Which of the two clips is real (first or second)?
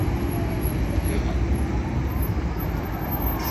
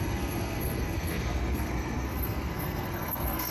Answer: first